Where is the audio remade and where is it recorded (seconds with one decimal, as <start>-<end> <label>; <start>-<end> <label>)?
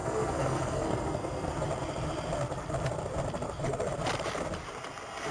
0.0-1.5 remade; 1.5-5.3 recorded